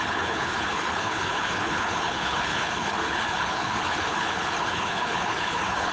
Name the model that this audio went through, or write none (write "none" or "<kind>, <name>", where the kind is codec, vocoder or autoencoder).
codec, HILCodec